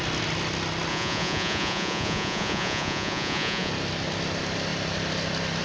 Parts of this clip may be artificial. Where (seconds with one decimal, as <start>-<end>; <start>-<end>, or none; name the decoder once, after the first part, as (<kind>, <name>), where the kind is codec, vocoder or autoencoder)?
0.9-3.7 (vocoder, Vocos)